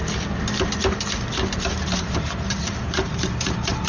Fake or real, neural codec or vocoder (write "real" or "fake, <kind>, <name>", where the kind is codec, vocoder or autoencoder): real